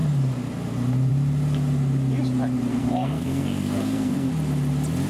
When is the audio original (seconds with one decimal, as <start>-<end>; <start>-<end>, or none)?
0.0-2.7; 4.3-5.1